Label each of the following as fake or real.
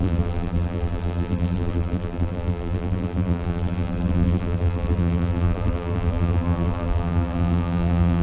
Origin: fake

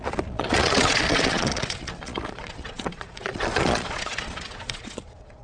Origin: fake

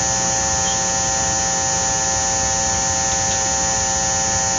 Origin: real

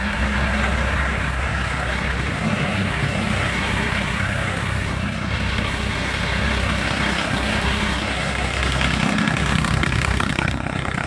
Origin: fake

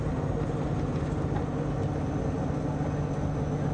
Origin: real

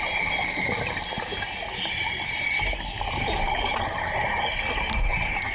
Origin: real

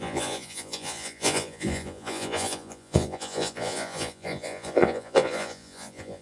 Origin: fake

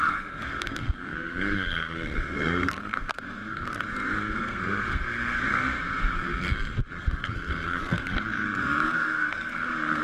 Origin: fake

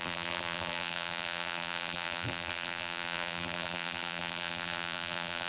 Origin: fake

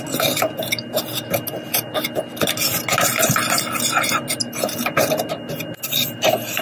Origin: real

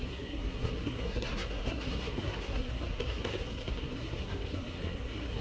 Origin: fake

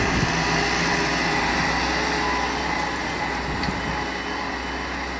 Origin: real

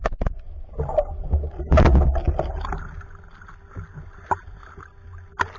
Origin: real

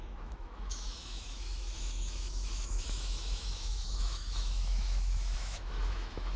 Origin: fake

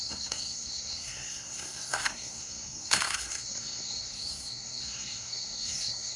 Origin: fake